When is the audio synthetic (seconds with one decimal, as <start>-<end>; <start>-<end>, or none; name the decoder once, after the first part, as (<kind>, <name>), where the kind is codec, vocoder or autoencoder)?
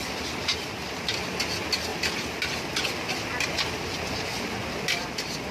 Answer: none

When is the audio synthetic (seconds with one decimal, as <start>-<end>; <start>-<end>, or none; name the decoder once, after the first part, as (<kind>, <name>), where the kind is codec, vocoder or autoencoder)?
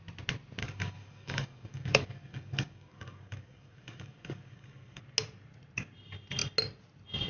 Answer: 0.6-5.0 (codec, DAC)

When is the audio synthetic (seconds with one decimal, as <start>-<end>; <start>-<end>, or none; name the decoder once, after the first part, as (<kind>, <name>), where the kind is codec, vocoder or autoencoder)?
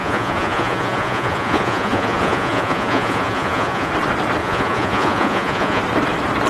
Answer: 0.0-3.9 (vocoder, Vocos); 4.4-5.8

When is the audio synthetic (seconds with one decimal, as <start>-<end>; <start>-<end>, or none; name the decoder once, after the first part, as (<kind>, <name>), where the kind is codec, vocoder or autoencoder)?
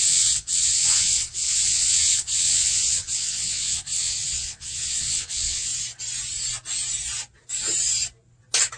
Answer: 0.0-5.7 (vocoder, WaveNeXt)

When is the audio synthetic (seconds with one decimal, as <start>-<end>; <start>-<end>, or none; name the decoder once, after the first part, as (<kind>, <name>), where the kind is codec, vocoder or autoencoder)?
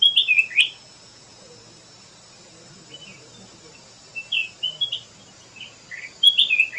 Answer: none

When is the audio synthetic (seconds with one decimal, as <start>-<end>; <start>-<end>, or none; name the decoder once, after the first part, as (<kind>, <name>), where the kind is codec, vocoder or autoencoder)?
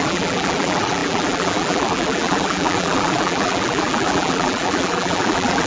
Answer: 0.0-5.7 (vocoder, BigVGAN v2)